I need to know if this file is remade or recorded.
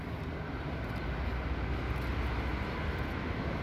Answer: recorded